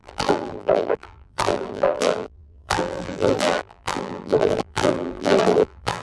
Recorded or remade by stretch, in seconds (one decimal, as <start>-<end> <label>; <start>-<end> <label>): 0.0-6.0 remade